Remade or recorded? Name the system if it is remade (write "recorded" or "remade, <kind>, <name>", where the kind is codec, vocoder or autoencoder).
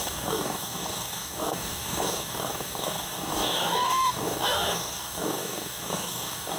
remade, codec, DAC